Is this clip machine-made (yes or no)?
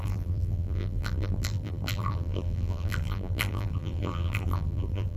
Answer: yes